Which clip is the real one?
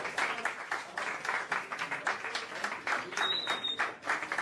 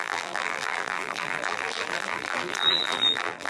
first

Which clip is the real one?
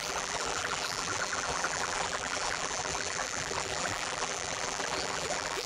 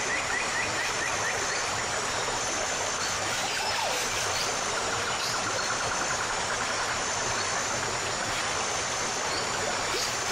second